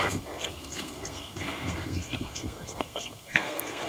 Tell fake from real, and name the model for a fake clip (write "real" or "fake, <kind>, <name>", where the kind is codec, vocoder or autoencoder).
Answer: fake, codec, SNAC